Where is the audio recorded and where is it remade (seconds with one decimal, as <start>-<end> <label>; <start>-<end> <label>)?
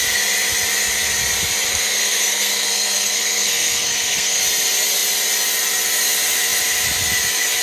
0.0-1.7 recorded; 1.7-4.4 remade; 4.4-7.6 recorded